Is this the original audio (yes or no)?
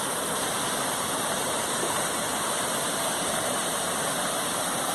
no